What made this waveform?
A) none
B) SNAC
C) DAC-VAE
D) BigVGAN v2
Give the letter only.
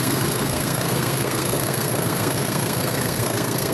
B